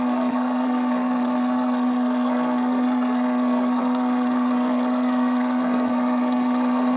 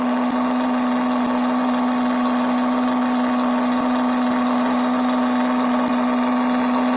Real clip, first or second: second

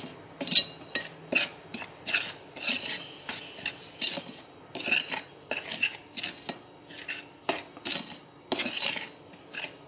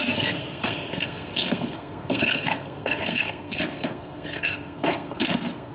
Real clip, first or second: first